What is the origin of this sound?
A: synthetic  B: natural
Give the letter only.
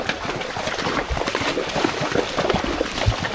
B